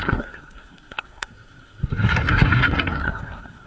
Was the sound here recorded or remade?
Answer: remade